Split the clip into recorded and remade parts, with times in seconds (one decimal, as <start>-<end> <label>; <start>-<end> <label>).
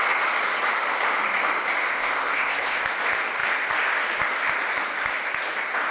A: 0.0-1.9 recorded; 1.9-2.8 remade; 2.8-5.9 recorded